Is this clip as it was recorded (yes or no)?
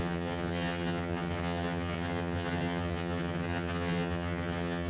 no